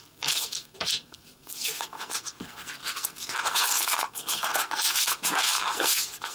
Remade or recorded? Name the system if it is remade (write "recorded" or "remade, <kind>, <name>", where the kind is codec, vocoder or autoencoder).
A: remade, codec, SNAC